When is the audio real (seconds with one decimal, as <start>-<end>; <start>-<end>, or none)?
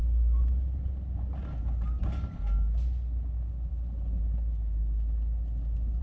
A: 0.0-6.0